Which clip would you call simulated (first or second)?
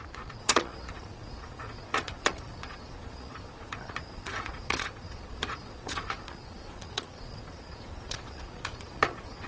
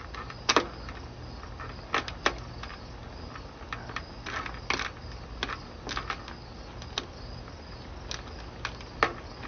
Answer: first